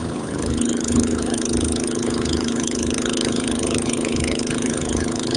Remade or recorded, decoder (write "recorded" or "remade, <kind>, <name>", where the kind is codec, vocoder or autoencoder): remade, codec, HILCodec